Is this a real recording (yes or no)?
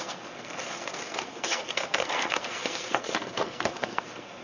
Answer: no